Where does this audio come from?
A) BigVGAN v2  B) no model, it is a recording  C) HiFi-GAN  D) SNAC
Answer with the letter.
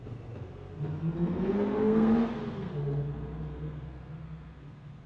D